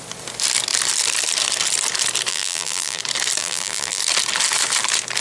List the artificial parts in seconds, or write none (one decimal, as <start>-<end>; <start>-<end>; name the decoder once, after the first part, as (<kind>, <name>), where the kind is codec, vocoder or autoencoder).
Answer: 2.3-3.0 (vocoder, BigVGAN v2); 3.4-4.0